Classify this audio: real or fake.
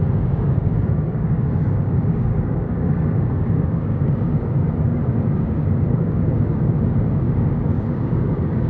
fake